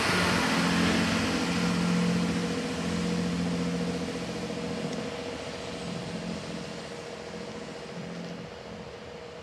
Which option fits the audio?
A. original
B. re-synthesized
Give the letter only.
A